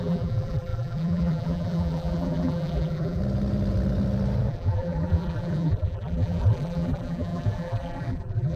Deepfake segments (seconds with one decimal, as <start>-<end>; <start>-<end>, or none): 0.0-3.2; 4.5-8.6

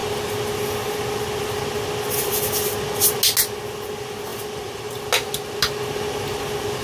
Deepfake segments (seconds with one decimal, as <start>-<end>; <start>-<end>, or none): 4.3-4.9

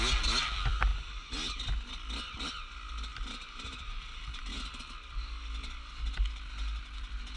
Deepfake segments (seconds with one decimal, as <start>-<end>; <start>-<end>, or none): 0.9-1.6; 3.1-4.5